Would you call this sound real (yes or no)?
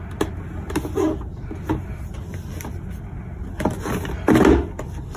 yes